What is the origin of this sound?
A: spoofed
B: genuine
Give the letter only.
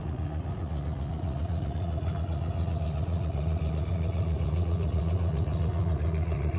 A